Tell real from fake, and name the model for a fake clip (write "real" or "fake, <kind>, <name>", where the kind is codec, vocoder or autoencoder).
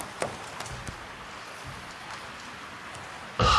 real